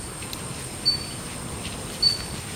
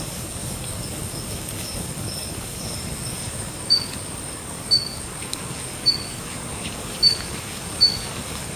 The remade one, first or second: second